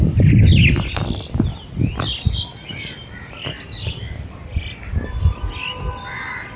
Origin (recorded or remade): recorded